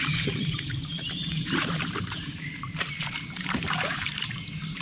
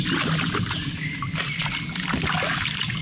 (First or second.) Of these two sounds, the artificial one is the first